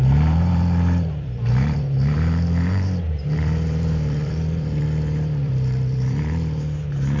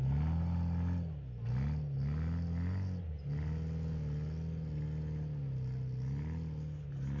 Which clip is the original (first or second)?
second